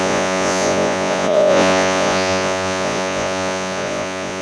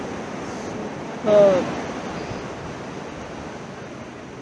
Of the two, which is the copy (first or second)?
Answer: first